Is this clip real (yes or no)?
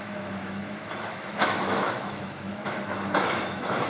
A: no